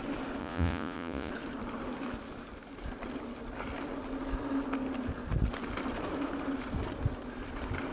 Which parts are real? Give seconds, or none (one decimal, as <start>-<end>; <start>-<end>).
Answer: 0.0-0.4; 1.3-7.9